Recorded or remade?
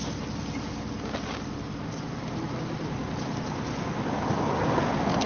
recorded